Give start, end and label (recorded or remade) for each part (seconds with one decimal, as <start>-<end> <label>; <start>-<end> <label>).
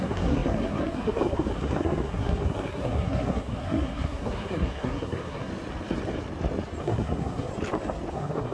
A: 0.0-5.5 remade; 5.5-6.8 recorded; 6.8-7.5 remade; 7.5-8.1 recorded; 8.1-8.5 remade